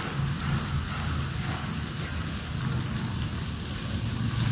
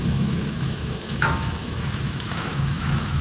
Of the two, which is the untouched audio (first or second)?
first